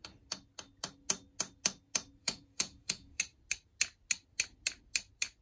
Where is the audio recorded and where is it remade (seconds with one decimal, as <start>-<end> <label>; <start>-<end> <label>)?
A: 0.0-2.2 recorded; 2.2-3.2 remade; 3.2-5.4 recorded